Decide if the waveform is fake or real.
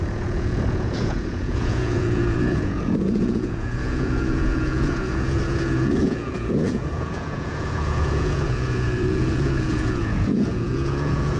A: fake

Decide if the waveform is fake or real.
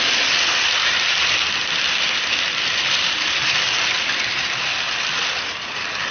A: real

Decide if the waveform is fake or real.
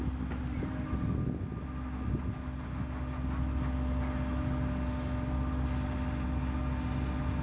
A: real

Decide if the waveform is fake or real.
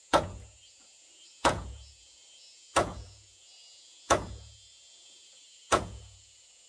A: fake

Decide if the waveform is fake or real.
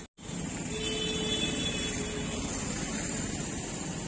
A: real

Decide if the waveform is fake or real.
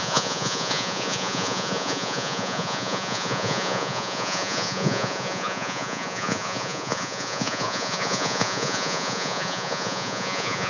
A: fake